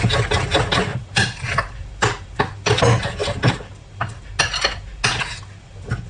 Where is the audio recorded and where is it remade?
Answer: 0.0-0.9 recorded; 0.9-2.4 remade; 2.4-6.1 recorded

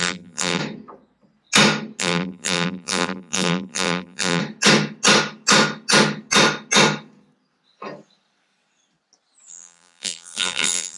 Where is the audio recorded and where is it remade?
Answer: 0.0-0.6 remade; 0.6-2.0 recorded; 2.0-4.4 remade; 4.4-9.5 recorded; 9.5-11.0 remade